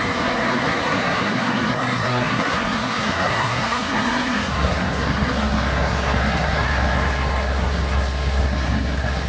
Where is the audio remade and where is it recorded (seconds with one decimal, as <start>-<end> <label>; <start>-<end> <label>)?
0.0-9.3 remade